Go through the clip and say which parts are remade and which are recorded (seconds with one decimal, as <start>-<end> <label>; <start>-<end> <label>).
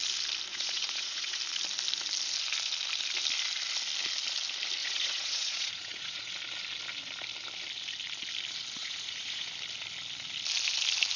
0.0-0.5 recorded; 0.5-1.4 remade; 1.4-4.8 recorded; 4.8-6.3 remade; 6.3-8.8 recorded; 8.8-9.5 remade; 9.5-11.2 recorded